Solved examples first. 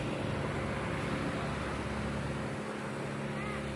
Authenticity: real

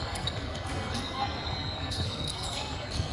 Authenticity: fake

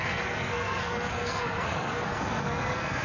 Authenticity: fake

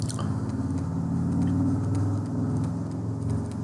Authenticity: real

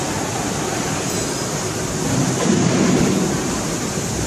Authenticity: real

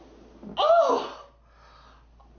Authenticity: real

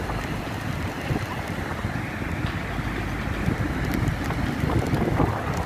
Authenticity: real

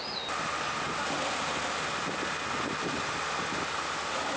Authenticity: real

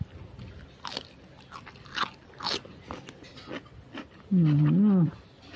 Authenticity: real